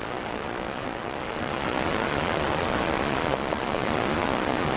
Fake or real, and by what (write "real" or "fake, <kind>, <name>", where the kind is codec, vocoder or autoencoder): fake, vocoder, Vocos